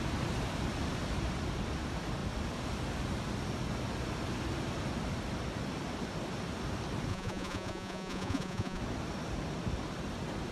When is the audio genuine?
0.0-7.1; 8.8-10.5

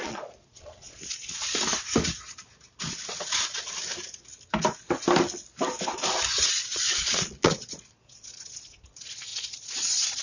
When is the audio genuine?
1.4-6.5

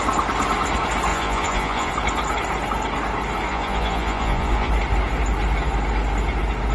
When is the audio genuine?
0.0-1.1; 1.9-3.5; 4.7-6.7